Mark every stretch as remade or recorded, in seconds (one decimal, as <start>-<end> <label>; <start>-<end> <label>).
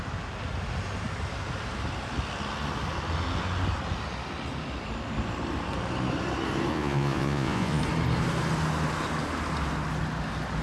0.0-6.7 recorded; 6.7-7.8 remade; 7.8-10.6 recorded